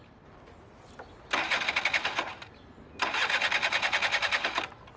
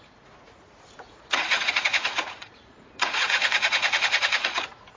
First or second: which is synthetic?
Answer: second